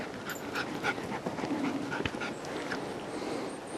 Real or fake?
real